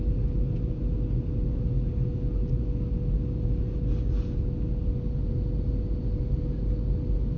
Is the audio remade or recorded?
recorded